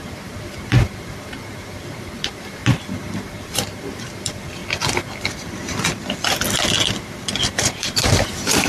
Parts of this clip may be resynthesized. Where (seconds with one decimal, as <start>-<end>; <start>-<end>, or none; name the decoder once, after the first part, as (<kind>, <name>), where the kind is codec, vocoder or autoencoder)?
0.0-2.6 (vocoder, BigVGAN v2); 3.2-4.6; 7.6-8.7